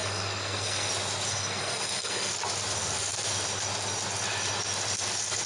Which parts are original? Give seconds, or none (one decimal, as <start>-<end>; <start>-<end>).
0.9-1.3; 2.3-5.5